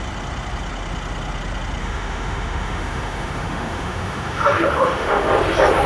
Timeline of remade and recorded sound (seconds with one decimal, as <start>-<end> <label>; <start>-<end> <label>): 0.0-1.8 recorded; 1.8-5.3 remade; 5.3-5.9 recorded